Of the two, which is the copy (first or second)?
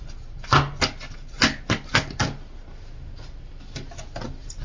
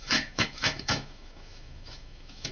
second